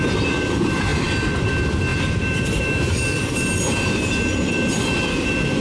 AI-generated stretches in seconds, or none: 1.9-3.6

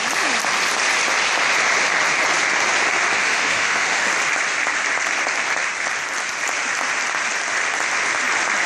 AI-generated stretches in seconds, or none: 3.2-4.1

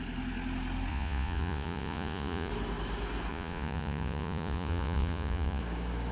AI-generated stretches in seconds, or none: 0.9-2.5; 3.3-5.6

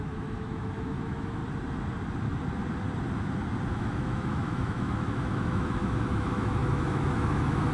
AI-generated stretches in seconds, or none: 0.0-1.4; 3.7-7.7

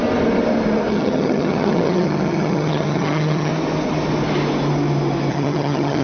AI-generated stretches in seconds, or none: 0.9-3.5; 5.3-6.0

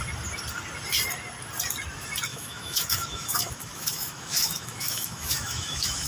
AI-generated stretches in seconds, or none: 2.3-6.1